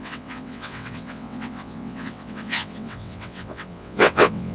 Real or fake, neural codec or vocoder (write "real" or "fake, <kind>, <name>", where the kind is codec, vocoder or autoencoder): fake, vocoder, WaveNeXt